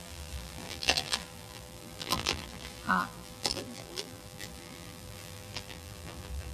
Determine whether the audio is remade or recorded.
remade